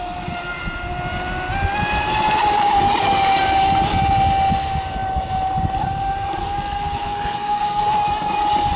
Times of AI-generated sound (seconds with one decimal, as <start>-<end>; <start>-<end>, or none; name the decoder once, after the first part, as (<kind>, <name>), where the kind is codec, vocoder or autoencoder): 6.4-7.8 (codec, SNAC)